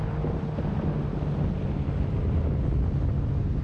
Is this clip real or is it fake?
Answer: real